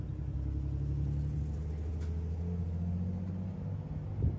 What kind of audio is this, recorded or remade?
recorded